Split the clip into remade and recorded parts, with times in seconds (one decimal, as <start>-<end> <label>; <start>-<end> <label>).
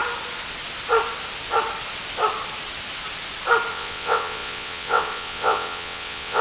0.0-3.7 recorded; 3.7-6.4 remade